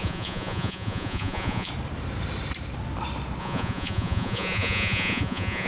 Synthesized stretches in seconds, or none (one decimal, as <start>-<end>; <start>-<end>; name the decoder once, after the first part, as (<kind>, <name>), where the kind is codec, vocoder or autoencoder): 0.0-1.7 (vocoder, Vocos); 3.4-5.7